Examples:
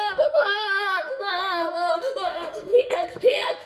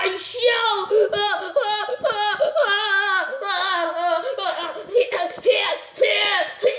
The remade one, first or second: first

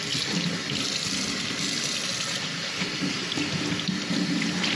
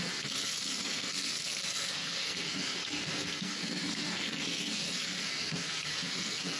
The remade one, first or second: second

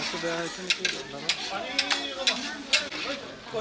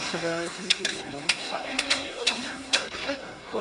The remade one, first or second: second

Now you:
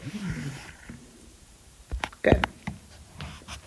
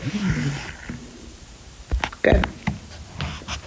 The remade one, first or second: first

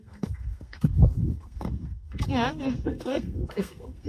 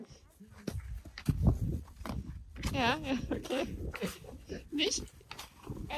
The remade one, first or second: first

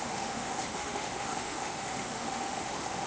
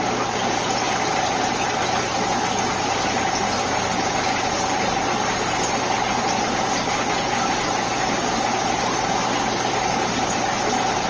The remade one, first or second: first